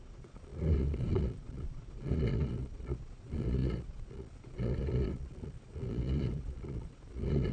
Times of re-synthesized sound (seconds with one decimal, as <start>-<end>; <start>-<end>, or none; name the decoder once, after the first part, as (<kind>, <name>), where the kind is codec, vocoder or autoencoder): 0.0-7.5 (vocoder, Vocos)